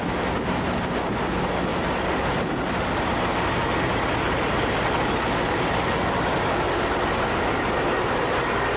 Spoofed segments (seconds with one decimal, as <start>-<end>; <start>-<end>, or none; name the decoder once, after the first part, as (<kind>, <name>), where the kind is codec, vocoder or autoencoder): none